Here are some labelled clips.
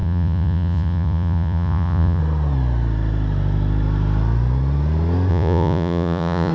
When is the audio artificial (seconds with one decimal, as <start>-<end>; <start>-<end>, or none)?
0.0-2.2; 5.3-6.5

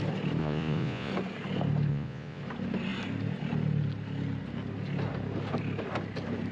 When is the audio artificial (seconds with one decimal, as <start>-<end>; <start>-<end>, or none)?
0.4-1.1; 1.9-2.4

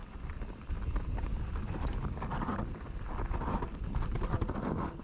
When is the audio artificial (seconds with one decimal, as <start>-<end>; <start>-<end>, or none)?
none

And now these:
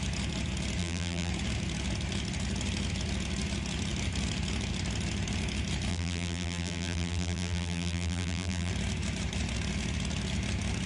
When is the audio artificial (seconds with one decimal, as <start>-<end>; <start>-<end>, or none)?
0.8-1.3; 5.9-8.7